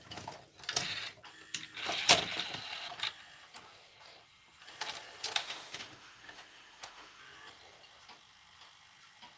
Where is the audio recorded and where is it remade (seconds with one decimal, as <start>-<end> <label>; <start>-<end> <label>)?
0.0-5.4 recorded; 5.4-7.2 remade; 7.2-9.4 recorded